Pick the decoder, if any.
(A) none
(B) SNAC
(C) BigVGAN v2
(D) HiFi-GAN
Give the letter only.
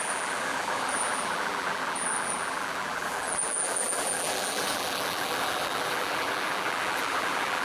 C